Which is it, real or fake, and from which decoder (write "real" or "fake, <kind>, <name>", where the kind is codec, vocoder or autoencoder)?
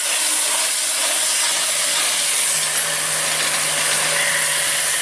real